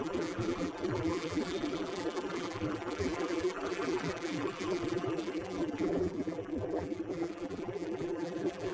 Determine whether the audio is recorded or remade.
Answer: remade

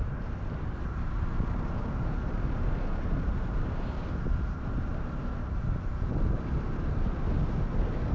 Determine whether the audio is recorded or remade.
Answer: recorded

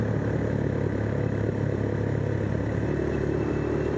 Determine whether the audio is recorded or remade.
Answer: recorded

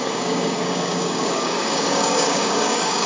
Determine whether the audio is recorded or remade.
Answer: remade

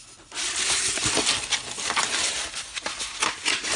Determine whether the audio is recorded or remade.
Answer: recorded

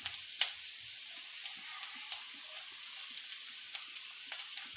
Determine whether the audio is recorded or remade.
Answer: recorded